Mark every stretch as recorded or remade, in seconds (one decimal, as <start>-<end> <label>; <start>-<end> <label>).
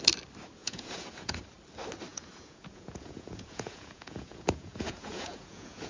0.0-0.6 recorded; 0.6-1.4 remade; 1.4-2.1 recorded; 2.1-5.9 remade